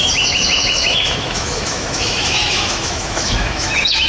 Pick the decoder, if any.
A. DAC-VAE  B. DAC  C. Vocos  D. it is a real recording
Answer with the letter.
A